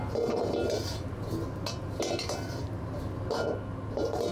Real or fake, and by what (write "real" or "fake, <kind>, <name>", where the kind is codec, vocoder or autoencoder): real